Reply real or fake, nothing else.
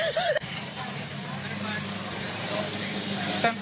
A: fake